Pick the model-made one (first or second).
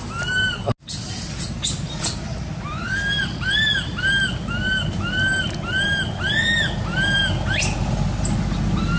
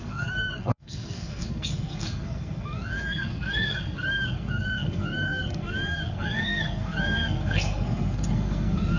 second